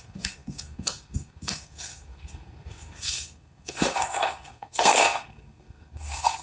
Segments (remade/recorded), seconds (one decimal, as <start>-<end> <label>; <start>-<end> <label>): 0.0-6.4 remade